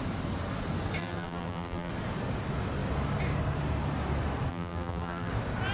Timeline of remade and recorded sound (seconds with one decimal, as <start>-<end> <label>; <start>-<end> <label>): 0.0-1.0 recorded; 1.0-1.9 remade; 1.9-4.5 recorded; 4.5-5.3 remade; 5.3-5.7 recorded